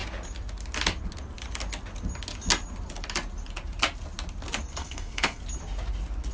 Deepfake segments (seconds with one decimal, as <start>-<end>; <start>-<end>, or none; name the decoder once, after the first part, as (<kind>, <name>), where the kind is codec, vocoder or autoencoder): 4.8-5.4 (codec, SNAC)